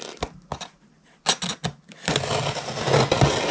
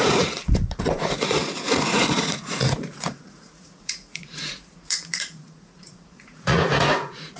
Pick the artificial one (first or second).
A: second